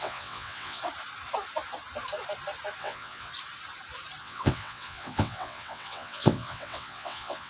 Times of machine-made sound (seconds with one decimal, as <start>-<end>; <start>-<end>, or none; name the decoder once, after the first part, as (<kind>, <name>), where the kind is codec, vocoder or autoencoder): 0.0-0.8 (vocoder, WaveNeXt); 2.8-3.3; 4.2-7.5